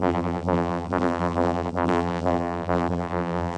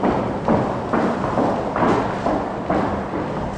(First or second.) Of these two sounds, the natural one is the second